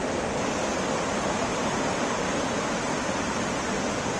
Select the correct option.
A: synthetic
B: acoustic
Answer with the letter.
B